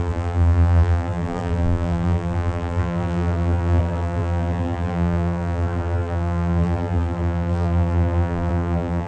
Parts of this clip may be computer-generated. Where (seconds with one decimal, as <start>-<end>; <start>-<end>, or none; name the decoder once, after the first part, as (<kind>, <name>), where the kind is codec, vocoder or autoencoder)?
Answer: 0.0-9.1 (vocoder, BigVGAN v2)

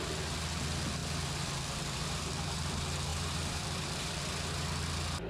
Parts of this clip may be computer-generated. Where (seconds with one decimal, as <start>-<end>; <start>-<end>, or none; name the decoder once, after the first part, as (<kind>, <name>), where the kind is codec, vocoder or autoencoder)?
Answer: 1.0-2.7 (vocoder, BigVGAN v2); 3.1-4.2

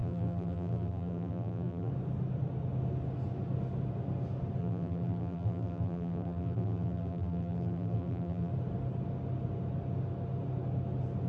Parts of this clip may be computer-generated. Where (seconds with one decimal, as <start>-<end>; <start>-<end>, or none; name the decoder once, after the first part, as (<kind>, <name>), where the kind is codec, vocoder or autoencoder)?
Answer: 0.0-1.9 (vocoder, BigVGAN v2); 4.6-8.5

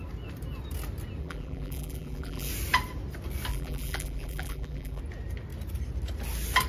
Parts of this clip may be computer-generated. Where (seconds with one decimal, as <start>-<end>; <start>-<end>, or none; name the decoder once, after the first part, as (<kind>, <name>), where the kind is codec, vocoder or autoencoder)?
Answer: 1.2-2.5 (vocoder, BigVGAN v2); 3.5-5.0

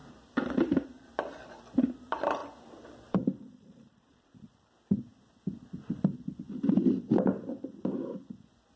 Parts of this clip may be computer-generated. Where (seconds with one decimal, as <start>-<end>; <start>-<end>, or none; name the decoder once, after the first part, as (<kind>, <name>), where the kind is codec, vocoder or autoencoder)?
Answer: 0.0-1.6 (vocoder, BigVGAN v2); 2.4-4.4